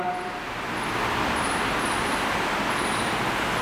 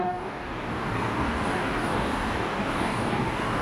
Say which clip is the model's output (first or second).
second